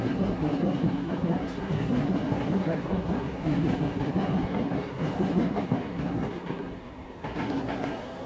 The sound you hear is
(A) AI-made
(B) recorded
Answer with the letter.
A